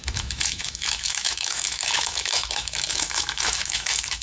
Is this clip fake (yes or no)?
yes